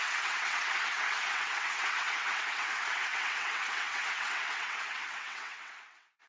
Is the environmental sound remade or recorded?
remade